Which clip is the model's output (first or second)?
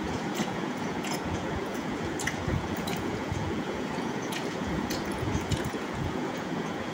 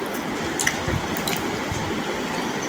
first